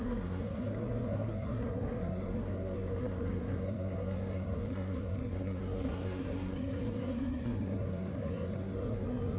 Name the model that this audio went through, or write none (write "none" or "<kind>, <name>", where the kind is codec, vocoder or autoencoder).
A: codec, SNAC